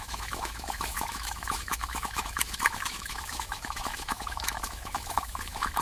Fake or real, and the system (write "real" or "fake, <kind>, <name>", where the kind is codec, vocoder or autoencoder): fake, autoencoder, DAC-VAE